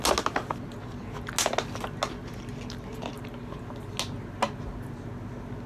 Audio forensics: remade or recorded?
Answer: recorded